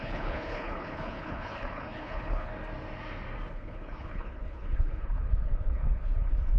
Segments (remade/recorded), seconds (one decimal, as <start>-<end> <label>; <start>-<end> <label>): 0.0-2.5 remade; 2.5-3.5 recorded; 3.5-6.6 remade